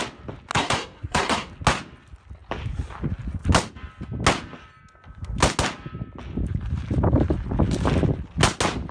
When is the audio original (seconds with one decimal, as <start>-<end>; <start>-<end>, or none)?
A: 0.0-0.5; 1.5-8.9